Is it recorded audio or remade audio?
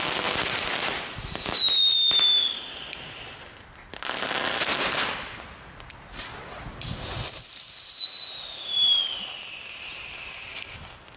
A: recorded